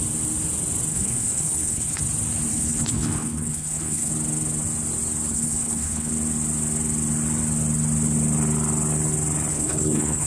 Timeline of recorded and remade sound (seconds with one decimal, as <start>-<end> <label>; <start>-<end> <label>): 0.0-0.9 recorded; 0.9-2.0 remade; 2.0-2.5 recorded; 2.5-4.1 remade; 4.1-5.3 recorded; 5.3-6.1 remade; 6.1-9.5 recorded; 9.5-10.3 remade

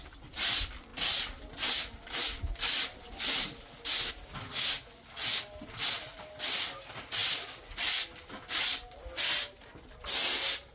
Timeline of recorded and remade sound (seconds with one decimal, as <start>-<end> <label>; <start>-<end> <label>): 0.0-10.7 recorded

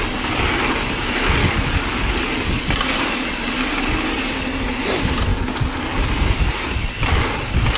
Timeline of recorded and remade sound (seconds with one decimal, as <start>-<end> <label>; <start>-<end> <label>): 0.0-1.4 recorded; 1.4-2.6 remade; 2.6-7.8 recorded